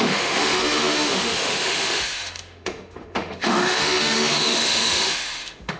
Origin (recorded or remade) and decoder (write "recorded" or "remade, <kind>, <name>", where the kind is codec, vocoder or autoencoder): remade, autoencoder, DAC-VAE